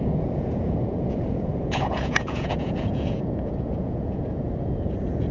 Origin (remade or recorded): remade